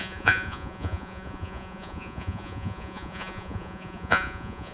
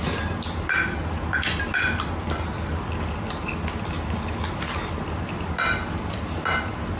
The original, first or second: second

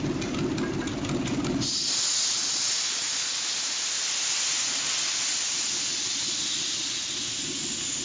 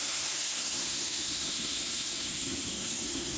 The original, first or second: first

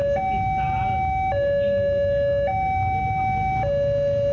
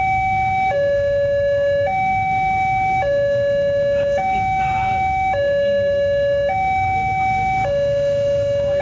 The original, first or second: first